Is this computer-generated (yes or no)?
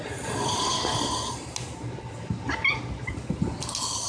no